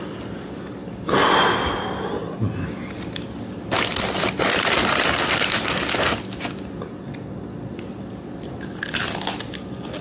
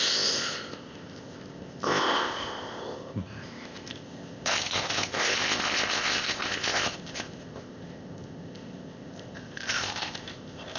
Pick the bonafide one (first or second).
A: first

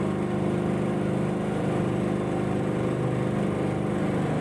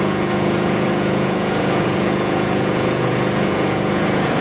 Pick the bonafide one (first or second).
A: first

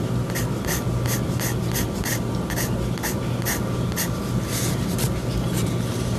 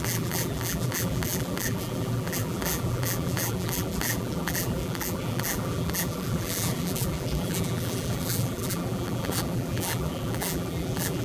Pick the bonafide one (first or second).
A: first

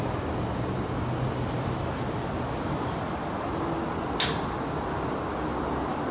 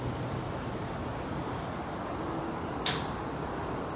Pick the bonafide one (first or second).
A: first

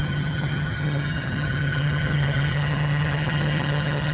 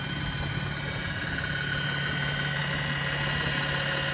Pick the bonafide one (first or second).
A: second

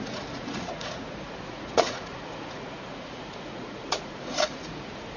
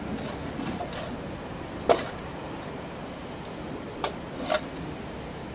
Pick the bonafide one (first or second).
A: second